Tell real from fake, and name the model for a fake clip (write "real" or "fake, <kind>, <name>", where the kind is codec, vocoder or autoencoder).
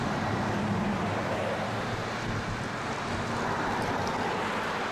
real